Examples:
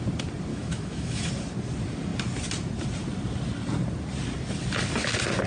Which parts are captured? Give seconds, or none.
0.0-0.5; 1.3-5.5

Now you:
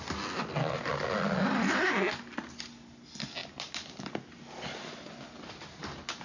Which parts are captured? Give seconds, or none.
0.0-6.2

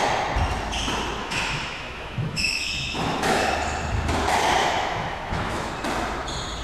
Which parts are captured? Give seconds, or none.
0.0-1.2; 3.5-4.6; 5.7-6.6

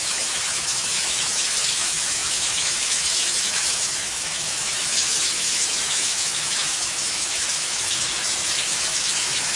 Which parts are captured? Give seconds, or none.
none